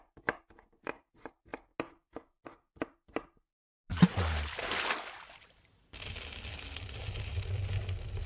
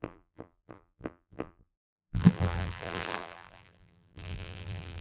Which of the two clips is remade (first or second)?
second